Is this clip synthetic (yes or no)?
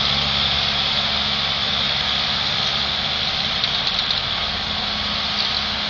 no